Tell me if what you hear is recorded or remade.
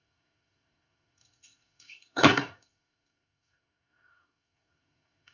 remade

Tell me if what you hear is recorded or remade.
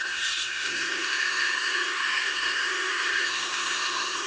remade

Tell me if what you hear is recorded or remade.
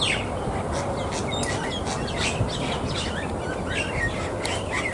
recorded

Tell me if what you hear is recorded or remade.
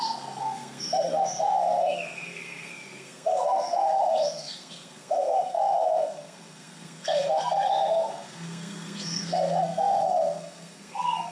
remade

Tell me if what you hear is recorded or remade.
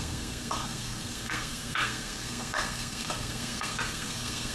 remade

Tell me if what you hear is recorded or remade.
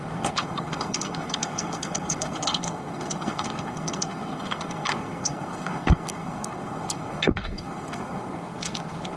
remade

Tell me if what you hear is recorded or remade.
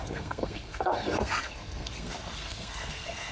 remade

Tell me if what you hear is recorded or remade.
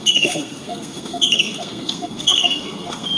remade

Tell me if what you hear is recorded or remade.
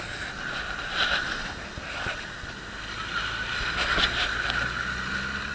recorded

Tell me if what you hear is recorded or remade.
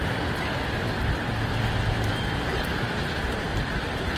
recorded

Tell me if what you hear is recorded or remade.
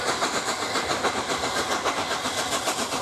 recorded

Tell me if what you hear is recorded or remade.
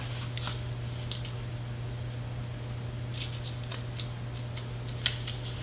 recorded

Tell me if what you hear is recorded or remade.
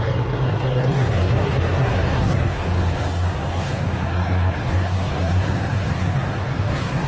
remade